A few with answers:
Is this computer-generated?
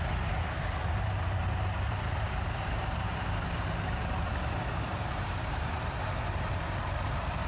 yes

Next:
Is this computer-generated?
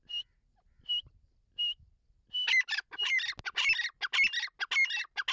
no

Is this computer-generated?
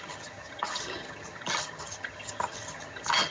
yes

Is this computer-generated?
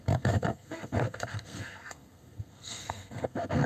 yes